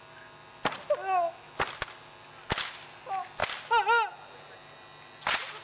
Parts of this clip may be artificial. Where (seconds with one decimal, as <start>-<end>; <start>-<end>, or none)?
none